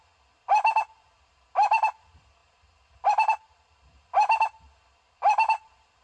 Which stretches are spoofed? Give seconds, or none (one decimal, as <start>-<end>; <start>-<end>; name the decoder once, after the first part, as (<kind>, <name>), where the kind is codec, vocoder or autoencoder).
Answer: none